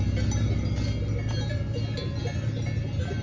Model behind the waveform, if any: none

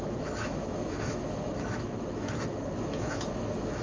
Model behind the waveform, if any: autoencoder, DAC-VAE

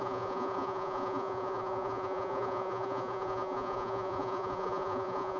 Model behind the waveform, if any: vocoder, Vocos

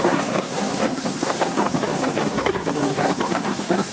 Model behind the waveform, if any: codec, SNAC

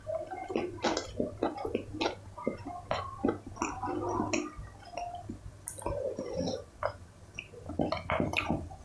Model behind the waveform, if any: none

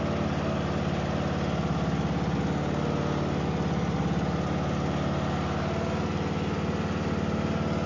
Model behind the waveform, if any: none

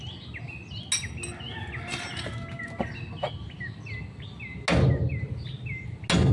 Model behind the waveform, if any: none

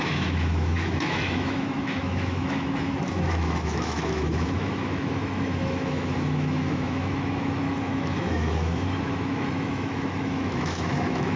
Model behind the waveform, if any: autoencoder, DAC-VAE